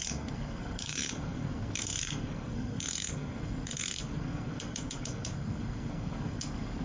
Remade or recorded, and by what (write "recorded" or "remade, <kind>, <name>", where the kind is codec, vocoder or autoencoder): remade, codec, SNAC